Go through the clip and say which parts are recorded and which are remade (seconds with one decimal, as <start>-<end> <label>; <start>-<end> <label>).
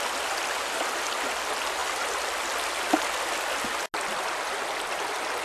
0.0-5.4 recorded